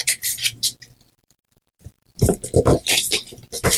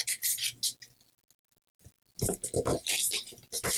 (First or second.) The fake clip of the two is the first